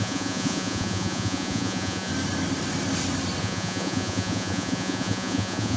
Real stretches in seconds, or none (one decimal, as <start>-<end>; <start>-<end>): 2.1-3.4